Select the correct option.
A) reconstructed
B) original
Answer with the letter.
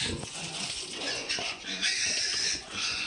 A